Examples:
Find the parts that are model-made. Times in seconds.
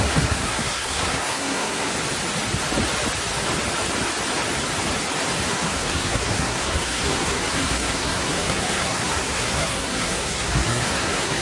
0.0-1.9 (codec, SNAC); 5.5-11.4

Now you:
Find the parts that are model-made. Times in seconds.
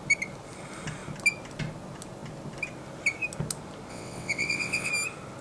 3.9-4.9 (vocoder, WaveNeXt)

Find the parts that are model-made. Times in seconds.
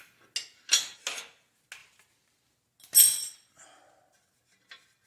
none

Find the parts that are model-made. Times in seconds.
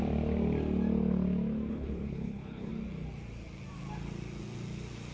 1.7-2.7 (codec, HILCodec)